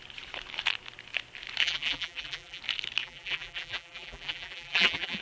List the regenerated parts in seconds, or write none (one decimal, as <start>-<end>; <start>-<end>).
1.6-2.6; 3.0-5.2